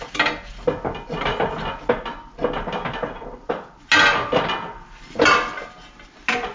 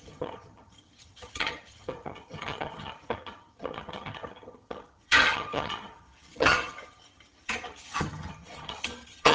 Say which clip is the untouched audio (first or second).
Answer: first